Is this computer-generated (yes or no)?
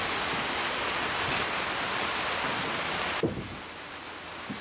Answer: no